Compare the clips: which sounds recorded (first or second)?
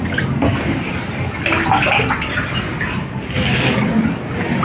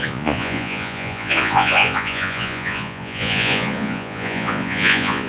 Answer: first